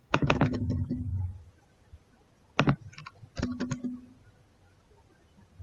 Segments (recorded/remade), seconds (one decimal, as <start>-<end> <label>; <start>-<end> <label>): 0.0-0.7 remade; 0.7-5.6 recorded